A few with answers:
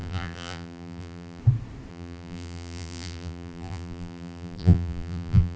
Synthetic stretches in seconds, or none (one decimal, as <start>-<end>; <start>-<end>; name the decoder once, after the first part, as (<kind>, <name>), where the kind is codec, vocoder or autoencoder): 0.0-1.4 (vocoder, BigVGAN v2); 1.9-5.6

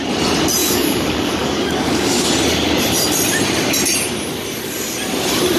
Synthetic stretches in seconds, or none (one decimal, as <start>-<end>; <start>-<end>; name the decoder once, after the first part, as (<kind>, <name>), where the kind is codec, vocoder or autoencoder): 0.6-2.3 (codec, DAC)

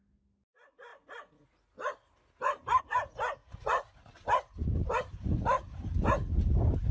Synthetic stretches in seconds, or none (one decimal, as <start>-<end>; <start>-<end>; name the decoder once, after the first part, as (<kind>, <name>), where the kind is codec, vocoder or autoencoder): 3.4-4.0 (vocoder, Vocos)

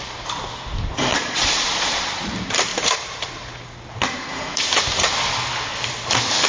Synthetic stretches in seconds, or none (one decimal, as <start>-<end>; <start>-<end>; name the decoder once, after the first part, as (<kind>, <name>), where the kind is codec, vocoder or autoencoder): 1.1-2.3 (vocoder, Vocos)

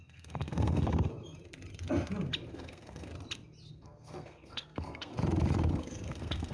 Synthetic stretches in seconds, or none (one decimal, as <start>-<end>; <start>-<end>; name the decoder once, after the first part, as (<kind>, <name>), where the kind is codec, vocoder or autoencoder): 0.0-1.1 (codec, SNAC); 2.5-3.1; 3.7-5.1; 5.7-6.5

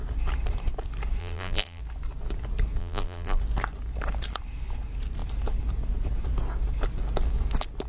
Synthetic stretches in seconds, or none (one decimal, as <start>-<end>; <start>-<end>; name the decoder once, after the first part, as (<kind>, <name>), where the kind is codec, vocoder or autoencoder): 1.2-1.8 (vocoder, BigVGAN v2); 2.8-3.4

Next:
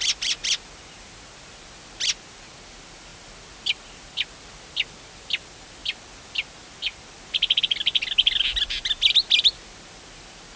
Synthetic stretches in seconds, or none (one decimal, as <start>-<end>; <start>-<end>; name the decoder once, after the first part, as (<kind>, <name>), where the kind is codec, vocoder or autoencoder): none